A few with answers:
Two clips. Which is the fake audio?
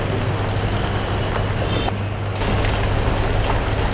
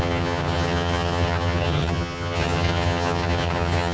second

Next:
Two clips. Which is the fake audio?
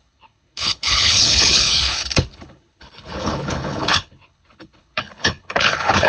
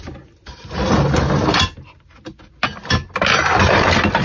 first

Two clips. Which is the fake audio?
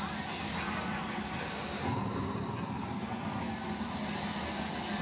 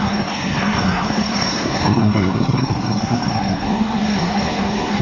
second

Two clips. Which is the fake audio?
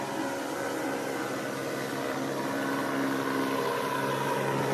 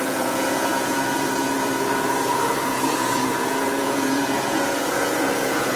second